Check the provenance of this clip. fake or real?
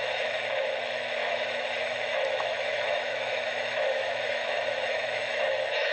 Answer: fake